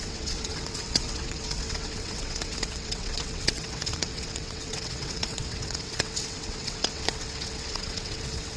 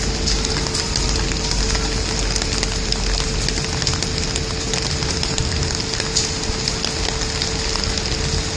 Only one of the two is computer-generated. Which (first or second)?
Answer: first